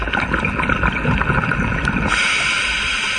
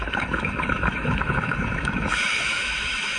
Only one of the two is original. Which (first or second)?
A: first